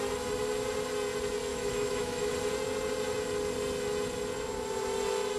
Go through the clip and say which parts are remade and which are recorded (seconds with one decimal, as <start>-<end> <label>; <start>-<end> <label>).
0.0-1.5 recorded; 1.5-2.3 remade; 2.3-5.4 recorded